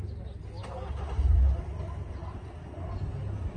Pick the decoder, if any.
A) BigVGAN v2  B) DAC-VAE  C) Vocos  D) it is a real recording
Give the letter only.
D